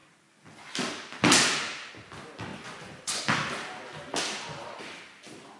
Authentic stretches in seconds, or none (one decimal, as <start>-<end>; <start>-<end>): 0.0-2.5; 3.2-5.6